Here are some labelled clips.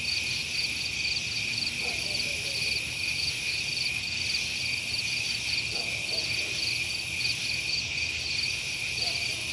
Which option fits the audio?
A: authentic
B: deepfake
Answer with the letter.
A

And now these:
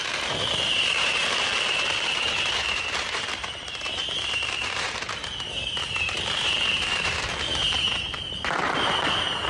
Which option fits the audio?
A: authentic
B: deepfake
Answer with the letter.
B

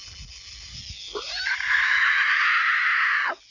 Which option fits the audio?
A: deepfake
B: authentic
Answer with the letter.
B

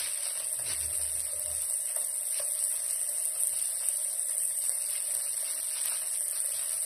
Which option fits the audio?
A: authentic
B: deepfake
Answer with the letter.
A